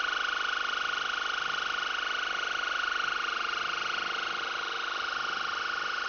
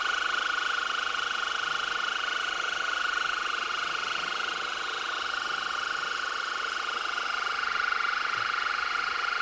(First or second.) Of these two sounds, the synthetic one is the second